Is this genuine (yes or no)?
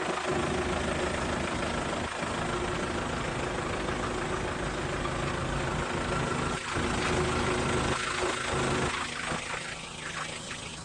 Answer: yes